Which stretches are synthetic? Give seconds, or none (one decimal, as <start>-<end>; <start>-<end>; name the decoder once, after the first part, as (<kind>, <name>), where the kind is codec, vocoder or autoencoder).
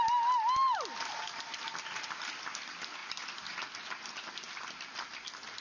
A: none